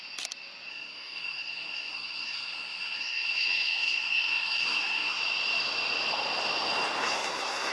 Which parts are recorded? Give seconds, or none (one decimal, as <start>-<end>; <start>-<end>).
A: 0.0-0.7; 5.2-7.0